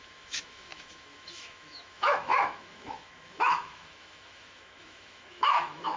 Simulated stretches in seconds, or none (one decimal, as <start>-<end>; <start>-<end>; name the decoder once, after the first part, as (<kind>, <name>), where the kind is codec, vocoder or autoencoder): 0.0-6.0 (autoencoder, DAC-VAE)